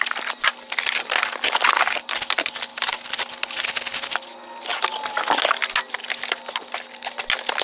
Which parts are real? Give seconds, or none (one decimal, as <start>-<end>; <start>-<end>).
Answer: 0.0-7.6